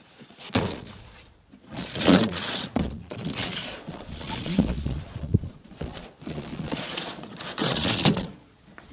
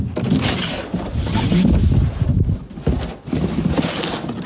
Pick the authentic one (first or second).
second